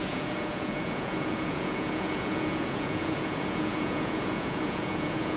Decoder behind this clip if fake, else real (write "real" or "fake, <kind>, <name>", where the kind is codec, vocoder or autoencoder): fake, vocoder, Vocos